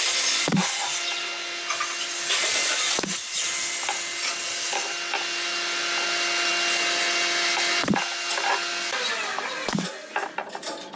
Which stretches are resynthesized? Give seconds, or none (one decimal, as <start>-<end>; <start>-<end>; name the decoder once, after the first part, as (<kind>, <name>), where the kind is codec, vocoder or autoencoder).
none